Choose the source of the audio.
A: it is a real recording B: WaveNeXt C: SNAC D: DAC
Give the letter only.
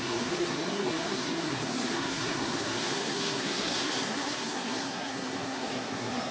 C